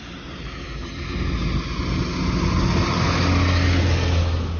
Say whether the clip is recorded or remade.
recorded